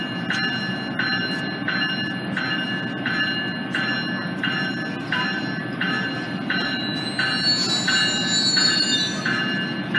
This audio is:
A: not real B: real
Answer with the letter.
B